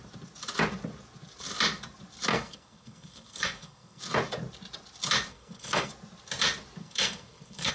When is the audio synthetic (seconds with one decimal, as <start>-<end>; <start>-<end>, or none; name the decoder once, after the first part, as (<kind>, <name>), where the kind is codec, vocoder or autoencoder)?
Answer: 2.3-4.0 (codec, SNAC); 5.3-5.9; 6.8-7.7